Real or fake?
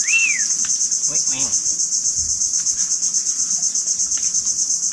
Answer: real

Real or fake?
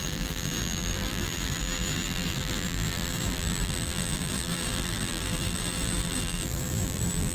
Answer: fake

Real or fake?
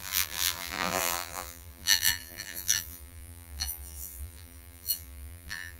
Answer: fake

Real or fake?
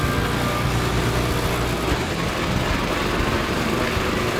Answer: real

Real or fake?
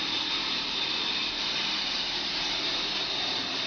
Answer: fake